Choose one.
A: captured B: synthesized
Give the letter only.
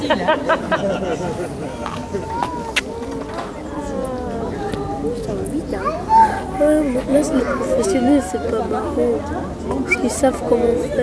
A